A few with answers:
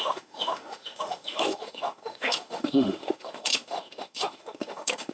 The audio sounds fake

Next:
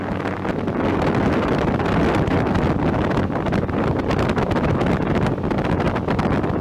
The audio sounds real